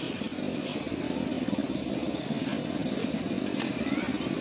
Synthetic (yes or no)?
no